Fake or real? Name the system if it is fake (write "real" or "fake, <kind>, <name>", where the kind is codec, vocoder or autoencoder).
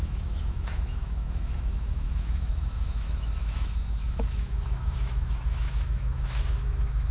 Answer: fake, autoencoder, DAC-VAE